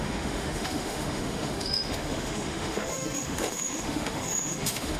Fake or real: fake